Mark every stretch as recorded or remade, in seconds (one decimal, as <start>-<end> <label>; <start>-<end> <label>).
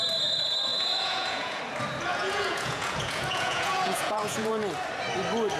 0.0-0.7 recorded; 0.7-1.6 remade; 1.6-2.1 recorded; 2.1-4.5 remade; 4.5-5.6 recorded